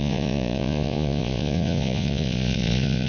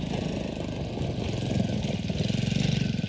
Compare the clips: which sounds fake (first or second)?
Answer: first